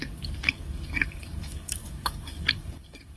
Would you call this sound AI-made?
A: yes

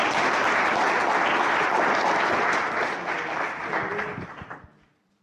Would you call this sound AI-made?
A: no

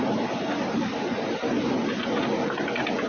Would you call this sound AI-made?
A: no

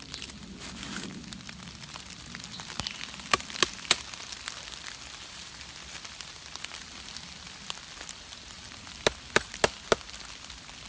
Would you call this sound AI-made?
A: no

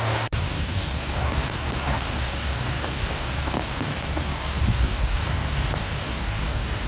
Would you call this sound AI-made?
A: yes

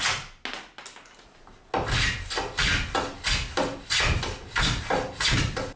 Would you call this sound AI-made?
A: no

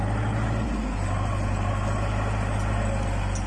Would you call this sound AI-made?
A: no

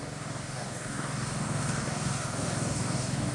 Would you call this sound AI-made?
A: yes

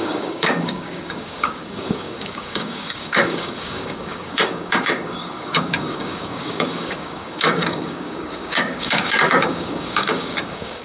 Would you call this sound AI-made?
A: yes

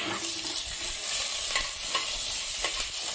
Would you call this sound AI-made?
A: no